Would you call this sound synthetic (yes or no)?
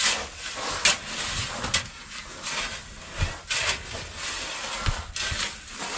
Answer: no